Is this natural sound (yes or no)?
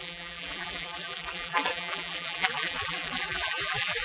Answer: no